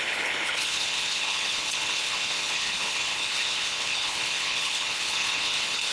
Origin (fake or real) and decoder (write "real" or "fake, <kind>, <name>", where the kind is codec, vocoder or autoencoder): fake, codec, HILCodec